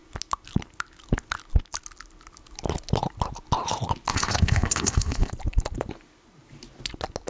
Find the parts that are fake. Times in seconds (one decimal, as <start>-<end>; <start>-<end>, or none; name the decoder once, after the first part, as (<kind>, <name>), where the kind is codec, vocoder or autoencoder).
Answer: 4.1-5.3 (codec, ZipCodec)